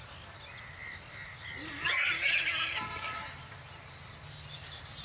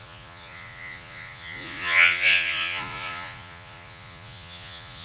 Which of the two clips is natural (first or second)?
first